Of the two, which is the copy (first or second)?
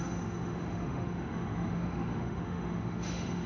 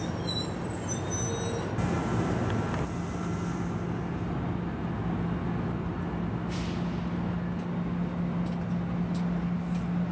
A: first